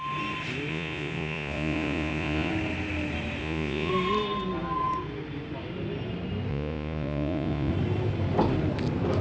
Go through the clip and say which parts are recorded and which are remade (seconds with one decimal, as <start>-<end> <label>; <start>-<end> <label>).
0.0-0.7 recorded; 0.7-2.5 remade; 2.5-3.4 recorded; 3.4-3.9 remade; 3.9-6.5 recorded; 6.5-7.7 remade; 7.7-9.2 recorded